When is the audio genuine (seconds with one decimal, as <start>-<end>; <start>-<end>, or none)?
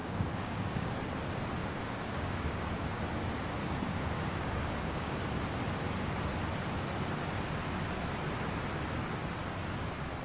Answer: 0.9-1.6; 3.0-3.6; 5.2-10.2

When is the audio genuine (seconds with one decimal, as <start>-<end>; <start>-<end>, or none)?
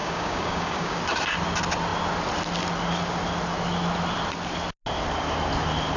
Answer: 1.0-6.0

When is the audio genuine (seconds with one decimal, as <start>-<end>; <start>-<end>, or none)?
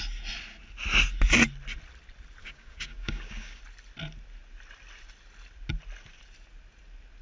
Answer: 0.0-2.4; 3.6-7.2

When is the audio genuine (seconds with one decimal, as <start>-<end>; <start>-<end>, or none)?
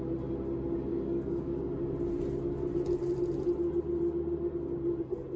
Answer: 0.0-0.9; 1.7-5.4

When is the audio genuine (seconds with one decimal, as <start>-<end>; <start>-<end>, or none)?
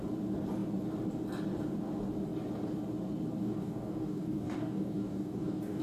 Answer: 0.0-3.4